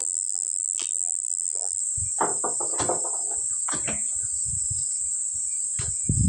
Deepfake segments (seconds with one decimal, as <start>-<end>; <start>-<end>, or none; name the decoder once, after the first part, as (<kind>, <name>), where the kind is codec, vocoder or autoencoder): 0.0-1.8 (vocoder, BigVGAN v2)